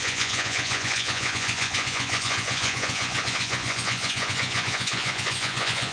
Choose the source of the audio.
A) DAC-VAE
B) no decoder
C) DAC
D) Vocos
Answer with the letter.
D